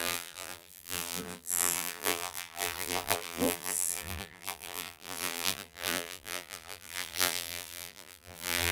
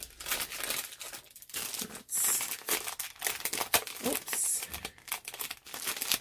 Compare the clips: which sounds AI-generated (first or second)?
first